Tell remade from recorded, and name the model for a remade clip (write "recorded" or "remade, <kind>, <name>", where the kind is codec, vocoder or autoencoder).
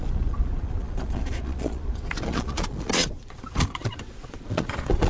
remade, vocoder, Vocos